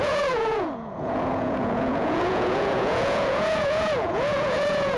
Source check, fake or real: fake